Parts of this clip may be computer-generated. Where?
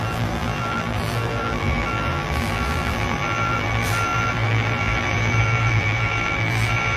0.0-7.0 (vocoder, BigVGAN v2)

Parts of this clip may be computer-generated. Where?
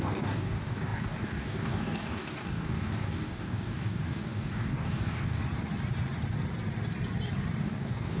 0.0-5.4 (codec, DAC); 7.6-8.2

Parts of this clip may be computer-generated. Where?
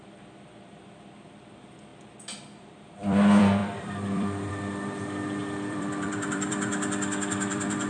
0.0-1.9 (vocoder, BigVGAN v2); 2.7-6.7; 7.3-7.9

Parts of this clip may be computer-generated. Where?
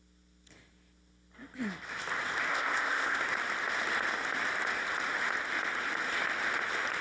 2.5-3.2 (codec, ZipCodec)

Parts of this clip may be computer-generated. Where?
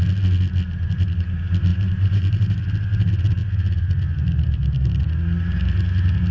1.7-2.6 (vocoder, BigVGAN v2)